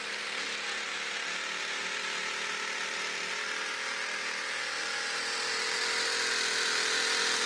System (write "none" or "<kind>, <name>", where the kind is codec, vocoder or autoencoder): none